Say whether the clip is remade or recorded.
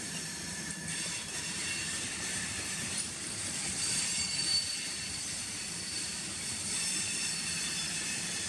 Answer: remade